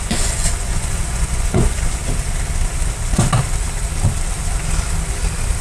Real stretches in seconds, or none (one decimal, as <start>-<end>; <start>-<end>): 2.0-5.6